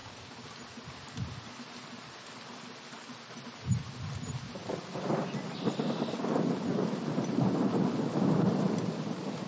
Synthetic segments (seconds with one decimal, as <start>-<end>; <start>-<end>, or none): none